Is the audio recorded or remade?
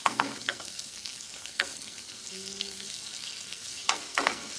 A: remade